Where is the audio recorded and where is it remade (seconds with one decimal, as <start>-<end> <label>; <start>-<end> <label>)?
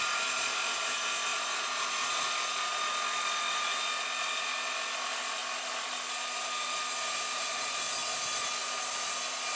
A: 0.0-9.6 recorded